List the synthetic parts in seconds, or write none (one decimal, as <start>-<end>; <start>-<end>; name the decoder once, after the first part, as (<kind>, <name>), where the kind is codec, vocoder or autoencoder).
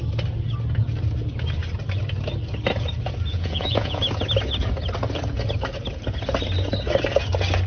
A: 3.3-4.0 (vocoder, Vocos)